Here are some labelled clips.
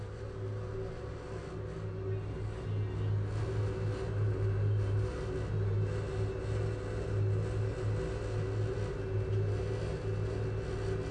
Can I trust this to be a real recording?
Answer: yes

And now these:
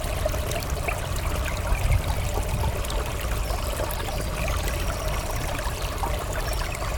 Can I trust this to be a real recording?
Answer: yes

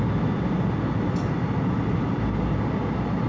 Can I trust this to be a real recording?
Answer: yes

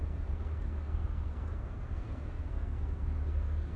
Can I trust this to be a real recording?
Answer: no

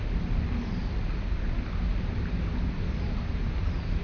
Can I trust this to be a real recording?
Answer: yes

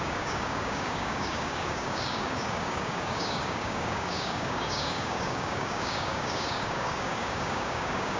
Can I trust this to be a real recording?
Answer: no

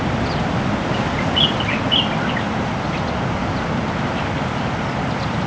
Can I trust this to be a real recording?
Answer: yes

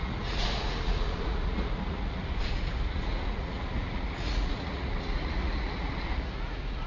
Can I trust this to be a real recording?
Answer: no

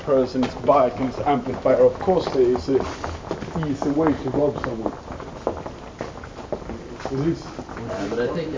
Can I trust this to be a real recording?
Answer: yes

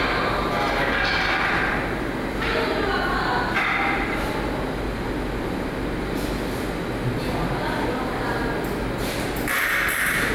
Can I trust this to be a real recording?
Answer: yes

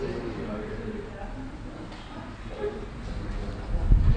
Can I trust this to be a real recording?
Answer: yes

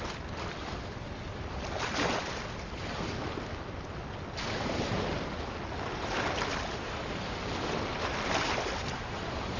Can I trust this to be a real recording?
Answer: yes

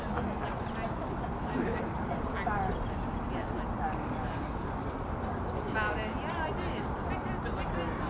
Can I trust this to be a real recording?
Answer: yes